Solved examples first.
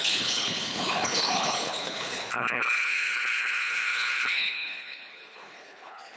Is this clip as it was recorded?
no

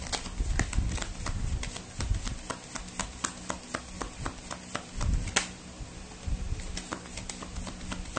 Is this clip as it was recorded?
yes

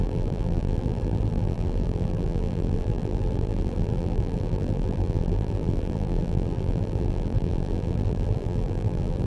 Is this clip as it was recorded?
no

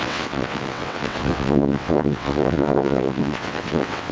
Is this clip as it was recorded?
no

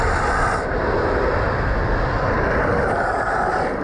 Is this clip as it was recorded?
yes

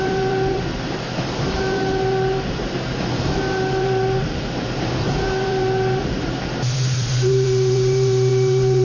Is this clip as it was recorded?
no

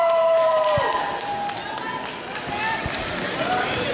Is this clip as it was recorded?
yes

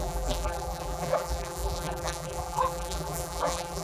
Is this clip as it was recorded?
no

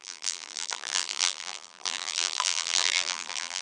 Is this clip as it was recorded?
no